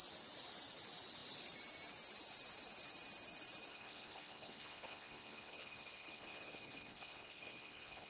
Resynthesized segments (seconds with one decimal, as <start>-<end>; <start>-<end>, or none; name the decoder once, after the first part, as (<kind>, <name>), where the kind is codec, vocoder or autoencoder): 3.7-8.1 (codec, HILCodec)